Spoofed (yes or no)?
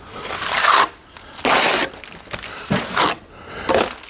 no